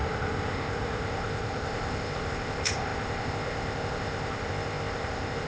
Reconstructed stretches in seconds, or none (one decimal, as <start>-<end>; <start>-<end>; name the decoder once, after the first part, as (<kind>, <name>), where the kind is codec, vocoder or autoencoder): 0.0-5.5 (codec, ZipCodec)